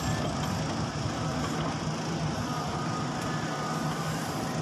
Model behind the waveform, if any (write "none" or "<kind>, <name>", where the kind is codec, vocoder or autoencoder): none